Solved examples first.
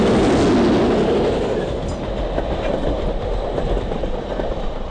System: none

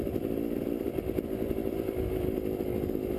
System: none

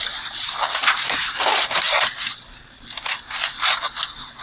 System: none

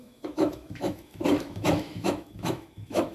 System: autoencoder, DAC-VAE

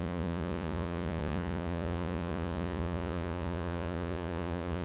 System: vocoder, Vocos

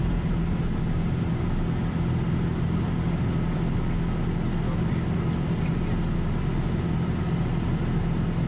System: none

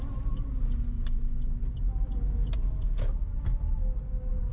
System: none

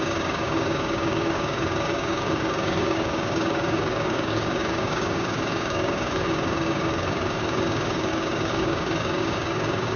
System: codec, DAC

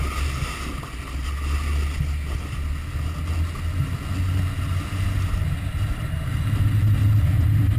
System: none